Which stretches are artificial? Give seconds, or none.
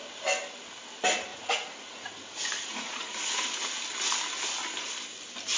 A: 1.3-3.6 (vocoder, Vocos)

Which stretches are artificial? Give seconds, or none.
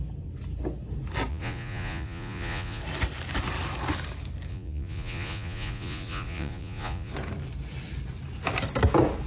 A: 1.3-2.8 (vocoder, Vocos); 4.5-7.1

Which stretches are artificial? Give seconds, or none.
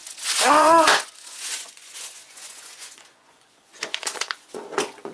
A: 0.0-5.1 (vocoder, Vocos)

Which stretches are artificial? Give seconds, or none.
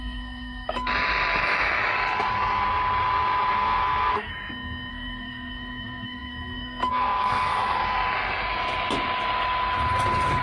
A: 0.0-0.9 (codec, SNAC); 3.5-4.3; 4.9-7.5